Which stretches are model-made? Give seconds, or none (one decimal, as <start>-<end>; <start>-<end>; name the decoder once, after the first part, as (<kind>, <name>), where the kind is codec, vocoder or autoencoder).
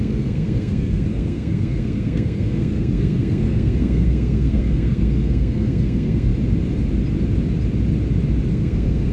0.0-6.3 (codec, SNAC); 8.5-9.1